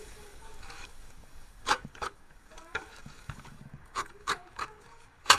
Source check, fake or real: fake